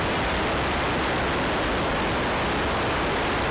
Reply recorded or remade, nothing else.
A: recorded